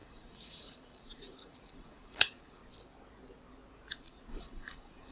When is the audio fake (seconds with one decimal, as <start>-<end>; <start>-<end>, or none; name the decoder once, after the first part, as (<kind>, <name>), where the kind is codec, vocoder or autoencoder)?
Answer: 0.0-2.6 (vocoder, Vocos); 3.9-5.1